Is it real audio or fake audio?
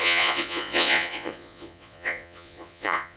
fake